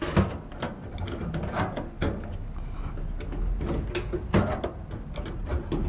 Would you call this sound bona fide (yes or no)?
yes